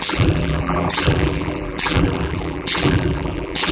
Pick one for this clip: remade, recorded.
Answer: remade